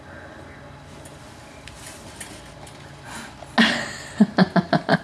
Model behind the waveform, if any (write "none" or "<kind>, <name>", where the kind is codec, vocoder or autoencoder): none